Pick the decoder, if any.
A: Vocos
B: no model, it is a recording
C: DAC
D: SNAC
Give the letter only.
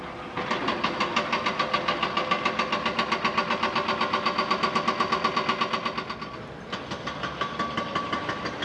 B